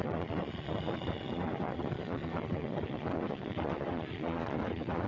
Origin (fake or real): fake